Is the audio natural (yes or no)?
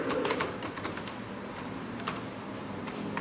no